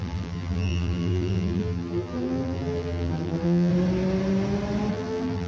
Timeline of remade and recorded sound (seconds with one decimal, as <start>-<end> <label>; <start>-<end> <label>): 0.0-3.7 remade; 3.7-4.9 recorded; 4.9-5.5 remade